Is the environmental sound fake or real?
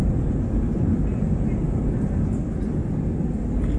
real